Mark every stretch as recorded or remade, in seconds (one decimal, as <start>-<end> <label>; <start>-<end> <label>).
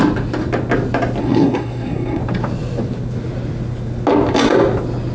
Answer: 0.0-1.2 recorded; 1.2-2.2 remade; 2.2-5.1 recorded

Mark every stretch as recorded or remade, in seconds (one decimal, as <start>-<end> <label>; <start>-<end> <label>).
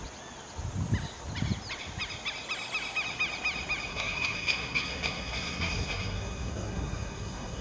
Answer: 0.0-3.9 recorded; 3.9-7.6 remade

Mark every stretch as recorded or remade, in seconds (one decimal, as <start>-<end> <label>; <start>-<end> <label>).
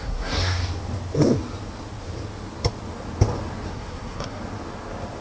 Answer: 0.0-0.6 remade; 0.6-3.7 recorded; 3.7-4.4 remade; 4.4-5.2 recorded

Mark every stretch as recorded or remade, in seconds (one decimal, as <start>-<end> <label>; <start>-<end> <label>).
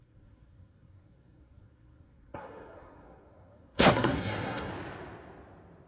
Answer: 0.0-4.7 remade; 4.7-5.9 recorded